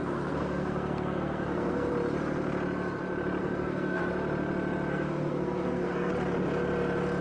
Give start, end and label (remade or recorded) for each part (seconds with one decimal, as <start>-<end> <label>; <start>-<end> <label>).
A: 0.0-1.9 remade; 1.9-3.4 recorded; 3.4-4.0 remade; 4.0-4.9 recorded; 4.9-6.1 remade; 6.1-7.2 recorded